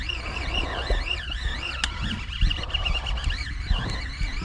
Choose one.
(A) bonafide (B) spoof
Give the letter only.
A